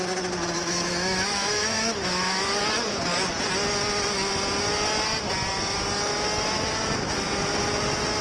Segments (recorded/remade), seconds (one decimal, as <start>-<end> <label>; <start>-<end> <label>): 0.0-0.6 recorded; 0.6-2.6 remade; 2.6-8.2 recorded